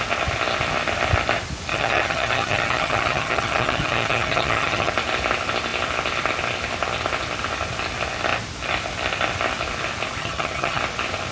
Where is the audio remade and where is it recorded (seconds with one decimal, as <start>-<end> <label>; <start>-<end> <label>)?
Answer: 0.0-1.7 recorded; 1.7-4.9 remade; 4.9-10.2 recorded; 10.2-10.8 remade; 10.8-11.3 recorded